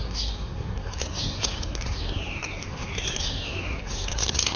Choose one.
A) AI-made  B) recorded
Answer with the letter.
A